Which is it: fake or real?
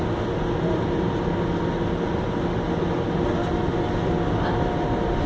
real